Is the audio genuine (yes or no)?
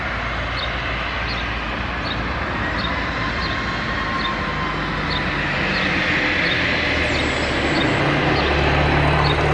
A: yes